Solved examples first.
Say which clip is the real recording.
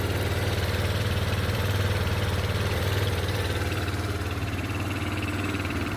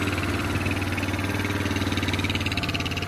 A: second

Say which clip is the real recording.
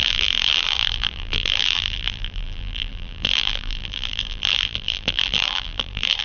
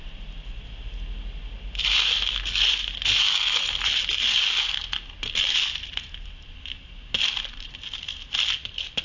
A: second